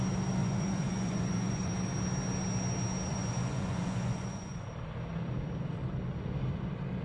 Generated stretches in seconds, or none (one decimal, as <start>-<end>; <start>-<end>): 0.4-1.7; 3.1-4.7